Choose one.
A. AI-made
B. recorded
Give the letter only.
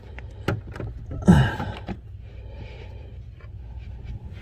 B